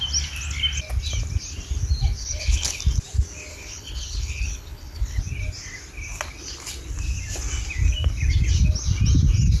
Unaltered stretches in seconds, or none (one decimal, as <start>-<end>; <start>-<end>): 0.0-2.2; 2.8-3.5; 5.2-9.6